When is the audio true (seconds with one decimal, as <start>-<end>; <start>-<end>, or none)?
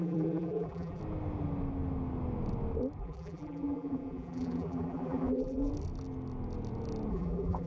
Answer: 1.0-3.0; 5.7-7.1